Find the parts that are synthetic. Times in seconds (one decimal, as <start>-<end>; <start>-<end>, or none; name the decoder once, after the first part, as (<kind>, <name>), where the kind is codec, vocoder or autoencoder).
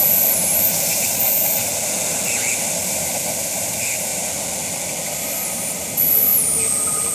0.0-1.7 (vocoder, BigVGAN v2); 2.8-4.1; 5.5-6.3